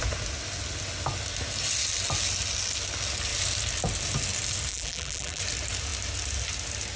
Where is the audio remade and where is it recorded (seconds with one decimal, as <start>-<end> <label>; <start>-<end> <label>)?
0.0-4.7 recorded; 4.7-5.4 remade; 5.4-7.0 recorded